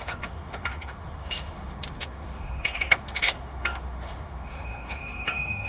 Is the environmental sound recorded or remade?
remade